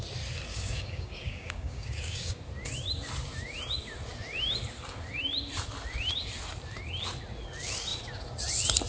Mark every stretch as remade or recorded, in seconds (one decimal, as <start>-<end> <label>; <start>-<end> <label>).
0.0-0.5 recorded; 0.5-2.4 remade; 2.4-8.9 recorded